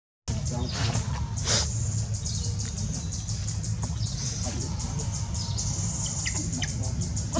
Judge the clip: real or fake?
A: real